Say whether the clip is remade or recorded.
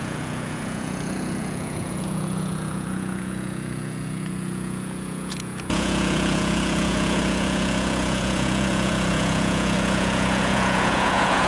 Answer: remade